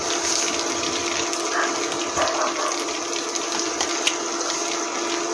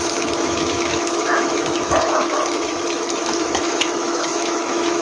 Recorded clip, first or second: first